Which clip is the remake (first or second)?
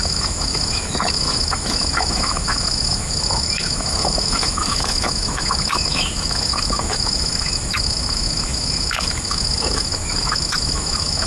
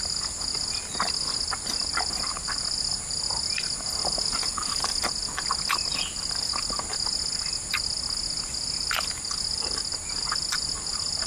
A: first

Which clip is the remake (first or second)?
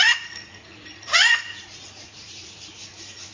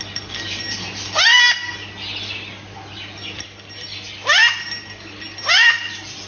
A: first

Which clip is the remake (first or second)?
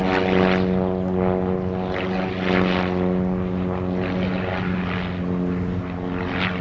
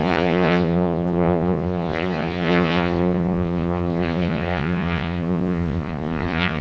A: second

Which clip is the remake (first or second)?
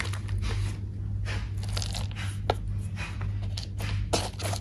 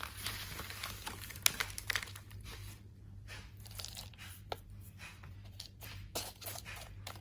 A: second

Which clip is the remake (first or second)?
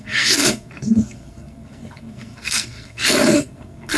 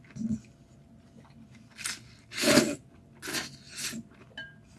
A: first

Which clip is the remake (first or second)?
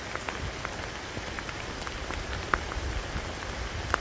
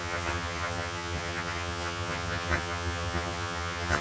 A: second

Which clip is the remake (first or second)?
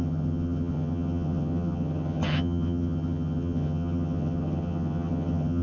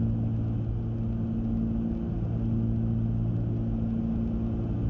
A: first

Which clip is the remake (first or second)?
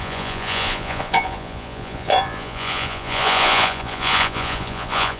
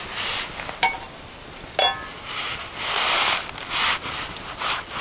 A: first